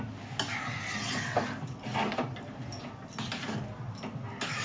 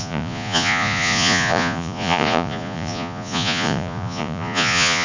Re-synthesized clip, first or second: second